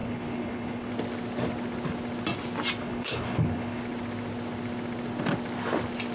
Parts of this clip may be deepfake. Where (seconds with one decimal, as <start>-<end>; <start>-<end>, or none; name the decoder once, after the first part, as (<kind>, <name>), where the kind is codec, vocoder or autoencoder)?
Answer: 0.0-0.9 (codec, HILCodec); 2.8-3.8